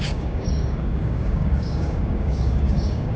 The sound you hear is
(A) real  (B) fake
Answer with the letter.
B